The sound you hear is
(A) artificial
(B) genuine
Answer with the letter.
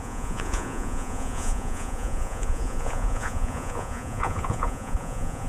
A